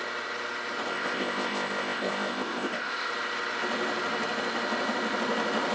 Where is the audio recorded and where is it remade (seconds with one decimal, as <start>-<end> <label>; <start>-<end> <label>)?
0.0-0.9 recorded; 0.9-3.1 remade; 3.1-5.7 recorded